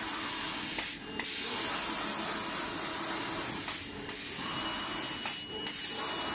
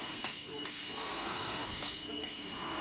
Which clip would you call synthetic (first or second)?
second